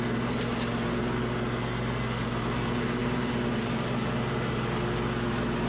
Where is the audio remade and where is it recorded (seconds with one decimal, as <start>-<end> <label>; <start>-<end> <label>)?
0.0-3.0 recorded; 3.0-4.5 remade; 4.5-5.7 recorded

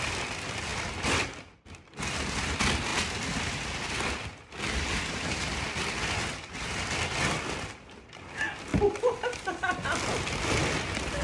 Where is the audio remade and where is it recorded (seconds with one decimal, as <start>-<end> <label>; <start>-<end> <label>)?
0.0-11.2 recorded

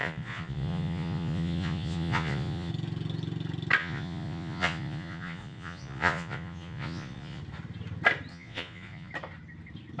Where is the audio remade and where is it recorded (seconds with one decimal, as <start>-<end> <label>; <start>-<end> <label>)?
0.0-2.7 remade; 2.7-3.8 recorded; 3.8-7.4 remade; 7.4-8.3 recorded; 8.3-9.1 remade; 9.1-10.0 recorded

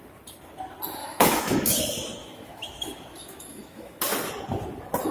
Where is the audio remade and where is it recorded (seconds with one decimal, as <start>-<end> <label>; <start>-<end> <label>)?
0.0-1.0 recorded; 1.0-1.8 remade; 1.8-2.2 recorded; 2.2-4.0 remade; 4.0-5.1 recorded

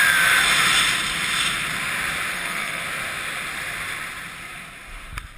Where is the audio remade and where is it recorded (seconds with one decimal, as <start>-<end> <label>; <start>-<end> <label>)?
0.0-2.3 recorded; 2.3-2.8 remade; 2.8-5.4 recorded